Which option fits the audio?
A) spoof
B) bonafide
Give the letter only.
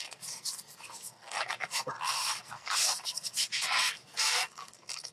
A